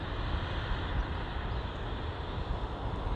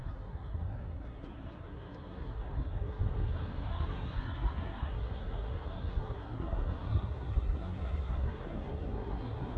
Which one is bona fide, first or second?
first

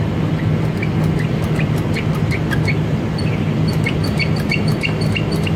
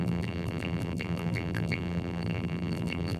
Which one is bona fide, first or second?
first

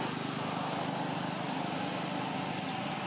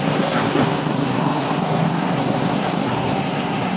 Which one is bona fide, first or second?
first